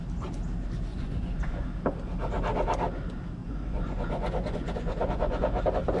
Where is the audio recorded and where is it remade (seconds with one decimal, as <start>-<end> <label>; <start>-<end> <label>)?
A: 0.0-0.9 recorded; 0.9-1.7 remade; 1.7-3.4 recorded; 3.4-5.6 remade; 5.6-6.0 recorded